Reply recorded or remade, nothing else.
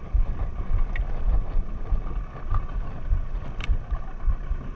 recorded